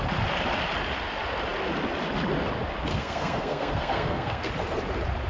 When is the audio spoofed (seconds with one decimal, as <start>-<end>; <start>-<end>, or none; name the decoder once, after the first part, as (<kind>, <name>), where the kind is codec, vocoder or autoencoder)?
2.9-4.5 (codec, SNAC)